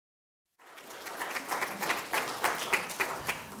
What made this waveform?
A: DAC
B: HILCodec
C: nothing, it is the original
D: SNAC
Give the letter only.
C